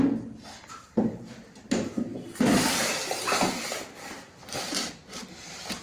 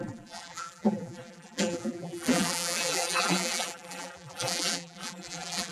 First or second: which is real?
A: first